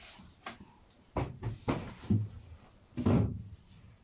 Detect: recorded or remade remade